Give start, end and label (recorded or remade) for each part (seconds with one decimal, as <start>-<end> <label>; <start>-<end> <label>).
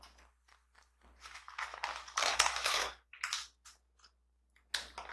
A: 0.0-2.2 recorded; 2.2-3.2 remade; 3.2-5.1 recorded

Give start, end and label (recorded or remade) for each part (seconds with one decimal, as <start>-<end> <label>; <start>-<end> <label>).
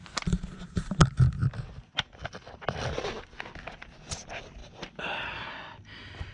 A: 0.0-6.3 recorded